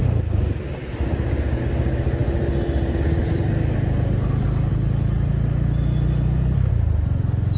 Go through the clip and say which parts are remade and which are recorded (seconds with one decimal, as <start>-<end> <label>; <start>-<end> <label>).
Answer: 0.0-7.6 recorded